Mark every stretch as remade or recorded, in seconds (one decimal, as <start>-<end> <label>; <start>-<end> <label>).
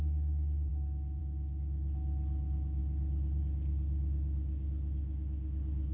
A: 0.0-5.9 recorded